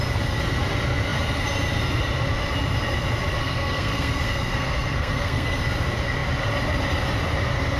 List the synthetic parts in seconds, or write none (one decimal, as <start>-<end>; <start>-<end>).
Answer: 3.4-5.6

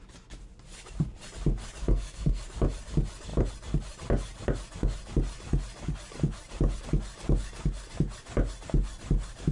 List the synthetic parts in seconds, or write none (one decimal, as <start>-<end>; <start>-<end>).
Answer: 1.8-2.4

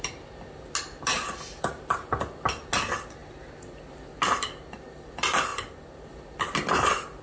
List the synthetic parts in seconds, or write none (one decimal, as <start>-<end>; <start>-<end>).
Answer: none

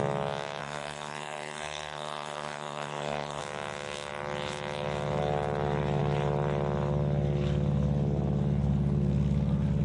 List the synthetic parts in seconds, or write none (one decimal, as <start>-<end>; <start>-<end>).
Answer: 0.6-3.4

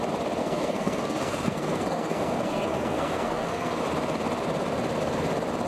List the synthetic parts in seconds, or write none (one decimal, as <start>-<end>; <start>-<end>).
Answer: 0.4-3.8

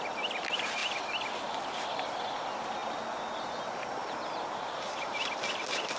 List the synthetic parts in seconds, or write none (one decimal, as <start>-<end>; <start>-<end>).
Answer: none

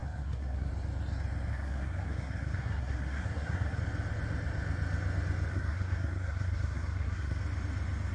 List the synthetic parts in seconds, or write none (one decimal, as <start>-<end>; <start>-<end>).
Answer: 0.0-0.7; 1.5-3.8; 5.5-7.4